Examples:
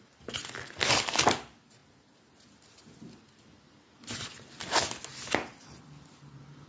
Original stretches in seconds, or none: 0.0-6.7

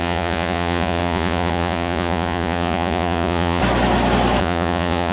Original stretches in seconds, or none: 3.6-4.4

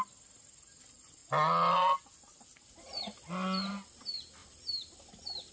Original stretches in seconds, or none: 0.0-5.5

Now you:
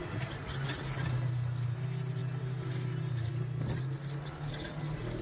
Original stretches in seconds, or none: 0.0-5.2

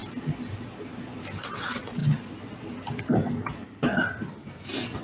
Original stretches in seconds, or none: 0.0-5.0

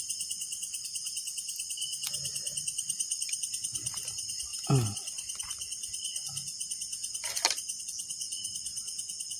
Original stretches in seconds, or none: 0.0-9.4